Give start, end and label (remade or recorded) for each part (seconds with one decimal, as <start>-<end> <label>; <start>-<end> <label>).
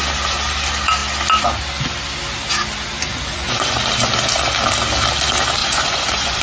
0.0-3.1 recorded; 3.1-3.8 remade; 3.8-5.6 recorded; 5.6-6.4 remade